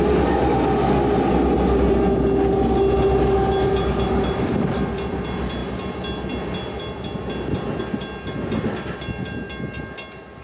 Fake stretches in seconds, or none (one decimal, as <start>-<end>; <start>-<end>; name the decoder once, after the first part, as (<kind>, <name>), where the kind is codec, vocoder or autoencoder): none